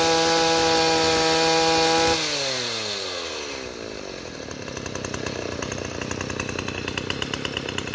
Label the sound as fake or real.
real